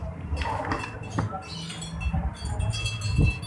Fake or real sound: real